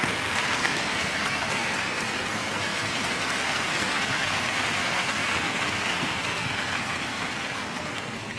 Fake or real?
fake